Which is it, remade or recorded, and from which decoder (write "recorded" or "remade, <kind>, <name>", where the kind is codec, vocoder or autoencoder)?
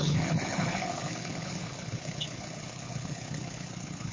remade, codec, HILCodec